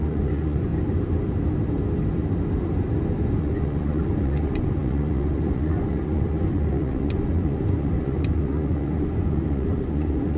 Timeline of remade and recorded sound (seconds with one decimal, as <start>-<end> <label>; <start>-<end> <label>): 0.0-0.7 remade; 0.7-3.4 recorded; 3.4-10.4 remade